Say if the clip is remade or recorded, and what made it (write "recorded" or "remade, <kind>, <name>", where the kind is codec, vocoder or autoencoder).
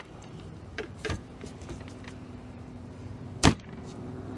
remade, vocoder, BigVGAN v2